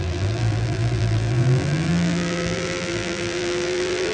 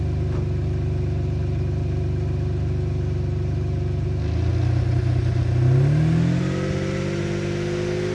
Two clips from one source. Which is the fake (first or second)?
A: first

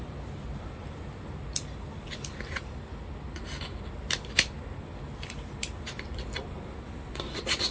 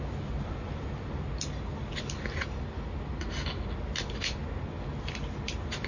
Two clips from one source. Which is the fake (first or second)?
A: first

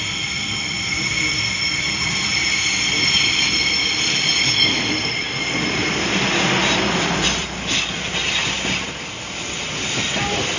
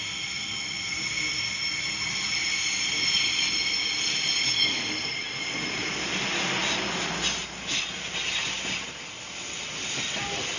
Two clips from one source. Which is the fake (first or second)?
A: first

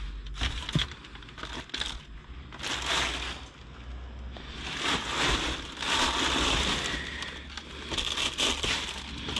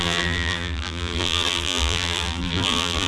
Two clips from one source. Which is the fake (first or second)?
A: second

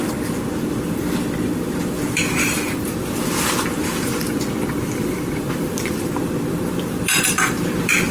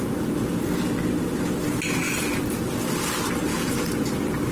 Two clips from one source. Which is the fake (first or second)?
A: first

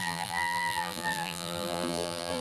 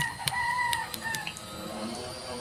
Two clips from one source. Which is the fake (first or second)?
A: first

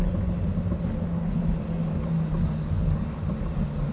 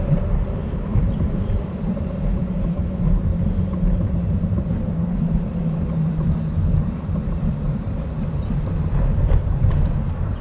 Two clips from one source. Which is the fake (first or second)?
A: second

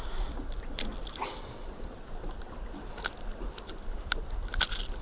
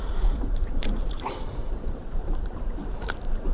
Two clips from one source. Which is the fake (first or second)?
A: second